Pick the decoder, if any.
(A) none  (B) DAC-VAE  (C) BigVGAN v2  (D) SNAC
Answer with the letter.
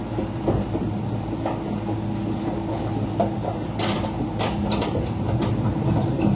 A